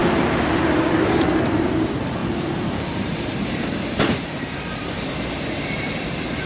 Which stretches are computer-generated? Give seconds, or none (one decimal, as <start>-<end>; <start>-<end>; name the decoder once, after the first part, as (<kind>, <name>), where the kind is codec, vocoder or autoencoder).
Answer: 1.0-6.5 (vocoder, BigVGAN v2)